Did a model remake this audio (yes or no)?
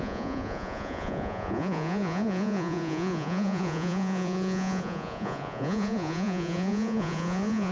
yes